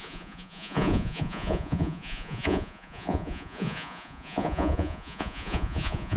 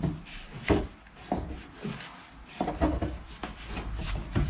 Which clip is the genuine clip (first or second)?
second